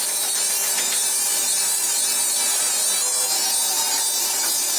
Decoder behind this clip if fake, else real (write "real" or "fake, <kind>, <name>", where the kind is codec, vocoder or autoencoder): real